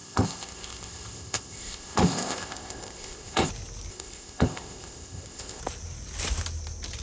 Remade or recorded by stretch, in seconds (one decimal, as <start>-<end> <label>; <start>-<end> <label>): 0.0-3.5 remade; 3.5-3.9 recorded; 3.9-5.6 remade; 5.6-7.0 recorded

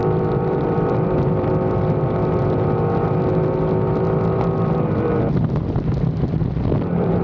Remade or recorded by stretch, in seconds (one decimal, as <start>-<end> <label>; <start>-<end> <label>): 0.0-1.5 remade; 1.5-7.2 recorded

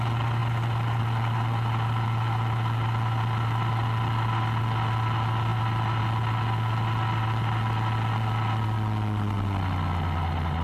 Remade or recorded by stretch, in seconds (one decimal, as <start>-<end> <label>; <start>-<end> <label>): 0.0-10.6 recorded